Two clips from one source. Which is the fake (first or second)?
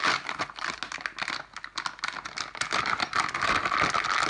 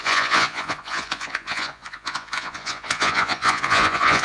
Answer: second